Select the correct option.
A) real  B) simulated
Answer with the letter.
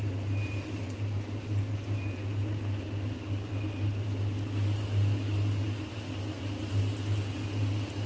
A